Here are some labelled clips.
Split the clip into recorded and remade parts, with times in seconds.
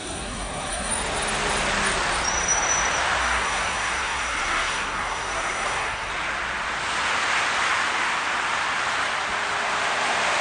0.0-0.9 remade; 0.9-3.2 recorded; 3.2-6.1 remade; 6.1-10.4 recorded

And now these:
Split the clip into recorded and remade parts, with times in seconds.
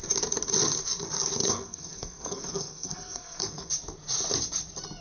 0.0-1.4 recorded; 1.4-3.7 remade; 3.7-5.0 recorded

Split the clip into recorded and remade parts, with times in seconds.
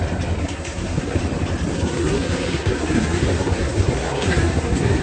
0.0-0.4 recorded; 0.4-1.2 remade; 1.2-1.7 recorded; 1.7-5.0 remade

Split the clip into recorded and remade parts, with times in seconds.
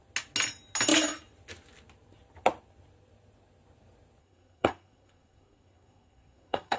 0.0-4.2 recorded; 4.2-6.8 remade